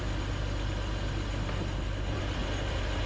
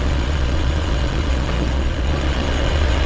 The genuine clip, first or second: first